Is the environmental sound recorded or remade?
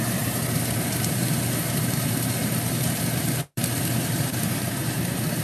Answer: remade